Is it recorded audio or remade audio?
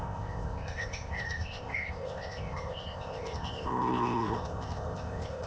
remade